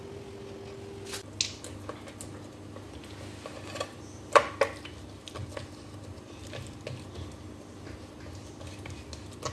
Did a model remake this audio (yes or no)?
no